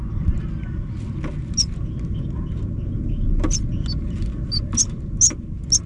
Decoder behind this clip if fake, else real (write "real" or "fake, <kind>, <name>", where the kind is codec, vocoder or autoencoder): real